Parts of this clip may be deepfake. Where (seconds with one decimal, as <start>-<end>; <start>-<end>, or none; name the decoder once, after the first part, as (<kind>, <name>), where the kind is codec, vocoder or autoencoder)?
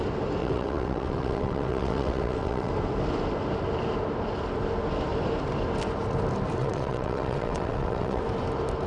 0.4-2.7 (vocoder, WaveNeXt); 6.6-8.2